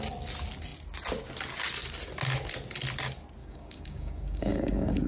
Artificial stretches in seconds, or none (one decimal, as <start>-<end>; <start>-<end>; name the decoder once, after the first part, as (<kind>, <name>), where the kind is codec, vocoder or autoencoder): 3.4-5.1 (codec, DAC)